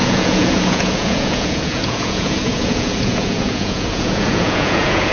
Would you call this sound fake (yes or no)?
yes